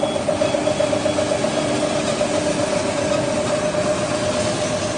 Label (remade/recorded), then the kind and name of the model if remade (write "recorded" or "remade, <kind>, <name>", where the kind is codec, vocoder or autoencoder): recorded